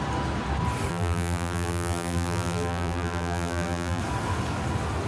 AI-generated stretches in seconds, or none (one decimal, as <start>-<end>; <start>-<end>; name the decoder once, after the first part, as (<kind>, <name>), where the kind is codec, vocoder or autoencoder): 0.9-4.0 (vocoder, BigVGAN v2)